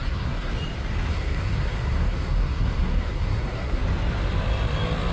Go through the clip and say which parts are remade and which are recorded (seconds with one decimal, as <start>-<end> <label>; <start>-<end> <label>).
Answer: 0.0-0.5 remade; 0.5-1.1 recorded; 1.1-3.8 remade; 3.8-5.1 recorded